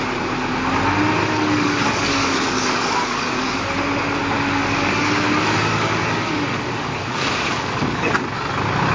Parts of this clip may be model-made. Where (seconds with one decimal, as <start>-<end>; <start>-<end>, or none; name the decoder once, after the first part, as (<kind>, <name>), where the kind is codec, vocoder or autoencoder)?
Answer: 1.2-3.5 (codec, DAC); 4.2-8.1